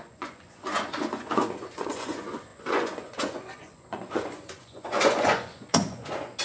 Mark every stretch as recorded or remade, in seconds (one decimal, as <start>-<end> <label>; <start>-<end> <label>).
0.0-6.4 remade